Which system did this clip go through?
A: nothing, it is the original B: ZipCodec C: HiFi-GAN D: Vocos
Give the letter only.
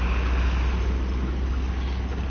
A